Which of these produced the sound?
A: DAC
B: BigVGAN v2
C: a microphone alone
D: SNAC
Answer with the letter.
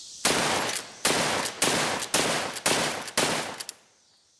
C